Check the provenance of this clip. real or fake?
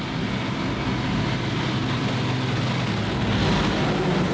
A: real